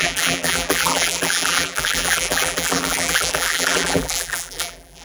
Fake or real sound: fake